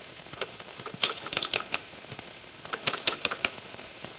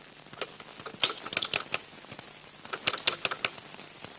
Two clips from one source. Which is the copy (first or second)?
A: first